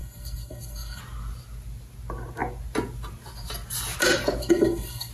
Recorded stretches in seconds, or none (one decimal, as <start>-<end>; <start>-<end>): 1.0-4.4